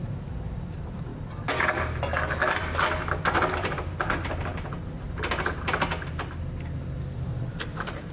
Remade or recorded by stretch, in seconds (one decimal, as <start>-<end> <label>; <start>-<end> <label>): 0.0-1.1 remade; 1.1-2.3 recorded; 2.3-4.5 remade; 4.5-6.8 recorded; 6.8-8.1 remade

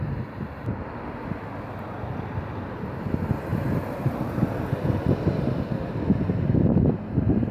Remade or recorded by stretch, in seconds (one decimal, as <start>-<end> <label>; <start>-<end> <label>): 0.0-7.5 recorded

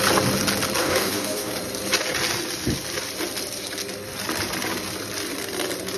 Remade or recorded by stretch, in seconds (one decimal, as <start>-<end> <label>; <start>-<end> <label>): 0.0-0.8 recorded; 0.8-1.5 remade; 1.5-6.0 recorded

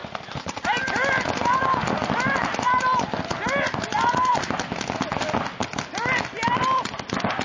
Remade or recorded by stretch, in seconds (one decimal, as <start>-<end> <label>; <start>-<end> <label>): 0.0-7.4 recorded

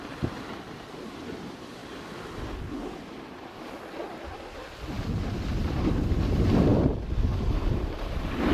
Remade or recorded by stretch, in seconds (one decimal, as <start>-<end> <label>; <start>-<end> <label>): 0.0-8.5 recorded

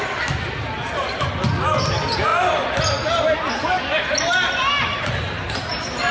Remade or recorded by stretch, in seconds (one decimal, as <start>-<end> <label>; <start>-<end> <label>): 0.0-6.1 recorded

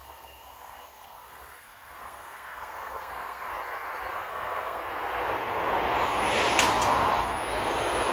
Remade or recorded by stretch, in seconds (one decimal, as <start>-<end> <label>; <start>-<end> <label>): 0.0-3.5 remade; 3.5-4.1 recorded; 4.1-4.8 remade; 4.8-8.1 recorded